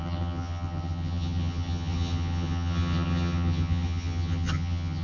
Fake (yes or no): yes